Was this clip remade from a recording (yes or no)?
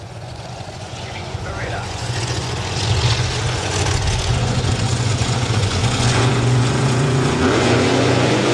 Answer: yes